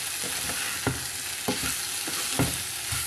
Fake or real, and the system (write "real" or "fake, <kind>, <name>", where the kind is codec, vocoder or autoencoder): real